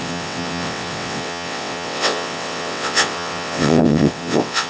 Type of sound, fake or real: fake